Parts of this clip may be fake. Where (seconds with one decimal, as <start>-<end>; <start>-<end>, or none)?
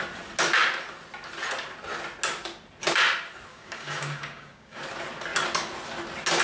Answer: 3.5-4.8